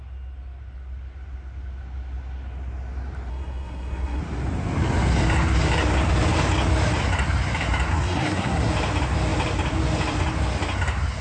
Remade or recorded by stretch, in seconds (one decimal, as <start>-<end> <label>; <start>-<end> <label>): 0.0-3.3 recorded; 3.3-4.2 remade; 4.2-7.9 recorded; 7.9-8.7 remade; 8.7-11.2 recorded